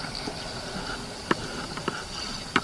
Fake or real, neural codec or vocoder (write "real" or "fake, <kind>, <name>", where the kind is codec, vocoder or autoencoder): real